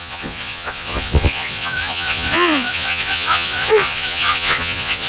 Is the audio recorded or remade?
remade